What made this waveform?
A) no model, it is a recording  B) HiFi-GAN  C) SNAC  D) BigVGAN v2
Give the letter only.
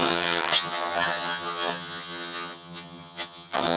B